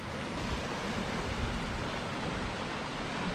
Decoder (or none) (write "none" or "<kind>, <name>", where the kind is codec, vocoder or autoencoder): none